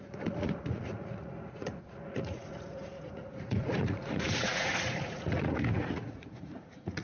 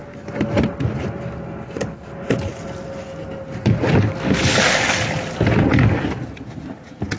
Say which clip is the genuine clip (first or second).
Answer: second